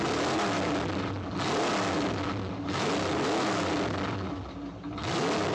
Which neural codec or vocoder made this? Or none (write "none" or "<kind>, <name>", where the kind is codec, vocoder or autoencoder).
none